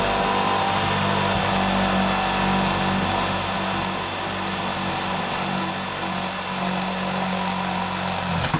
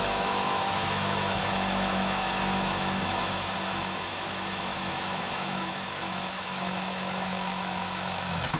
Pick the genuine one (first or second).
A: first